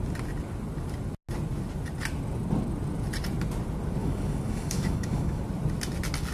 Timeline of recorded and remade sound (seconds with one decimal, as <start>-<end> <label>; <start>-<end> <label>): 0.0-4.0 recorded; 4.0-5.4 remade; 5.4-6.3 recorded